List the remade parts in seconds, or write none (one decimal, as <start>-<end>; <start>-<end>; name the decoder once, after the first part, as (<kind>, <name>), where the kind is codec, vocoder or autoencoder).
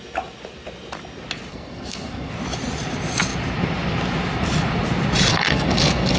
1.5-2.3 (codec, SNAC); 5.3-6.2